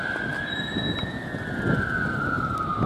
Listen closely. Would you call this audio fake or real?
real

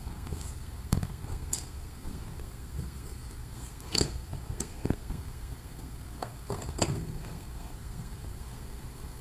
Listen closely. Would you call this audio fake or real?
fake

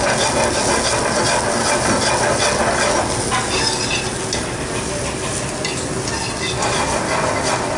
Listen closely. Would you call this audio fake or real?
real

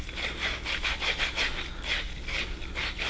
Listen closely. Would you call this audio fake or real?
real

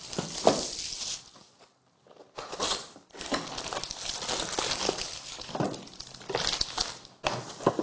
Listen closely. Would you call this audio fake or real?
real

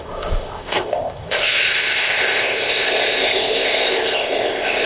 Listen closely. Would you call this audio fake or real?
fake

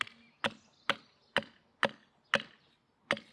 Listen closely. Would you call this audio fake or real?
real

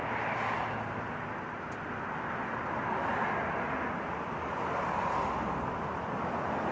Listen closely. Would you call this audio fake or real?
real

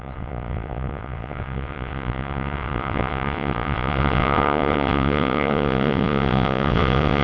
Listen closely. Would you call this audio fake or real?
fake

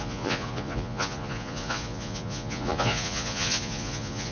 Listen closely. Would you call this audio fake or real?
fake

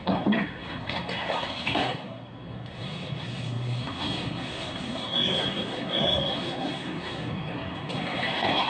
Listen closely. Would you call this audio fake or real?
fake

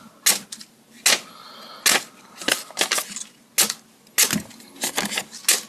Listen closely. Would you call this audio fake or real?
real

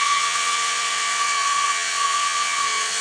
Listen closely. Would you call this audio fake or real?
fake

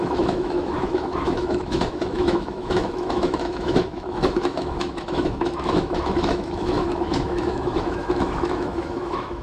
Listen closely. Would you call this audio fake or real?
fake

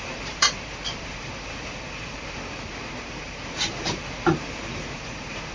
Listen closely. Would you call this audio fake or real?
fake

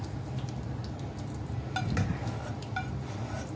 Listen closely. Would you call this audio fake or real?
real